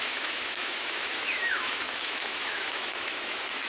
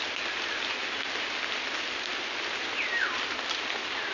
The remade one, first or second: first